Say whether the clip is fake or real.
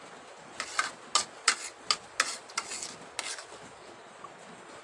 real